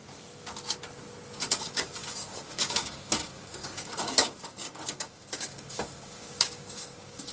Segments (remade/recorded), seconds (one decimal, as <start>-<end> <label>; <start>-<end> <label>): 0.0-1.5 recorded; 1.5-7.3 remade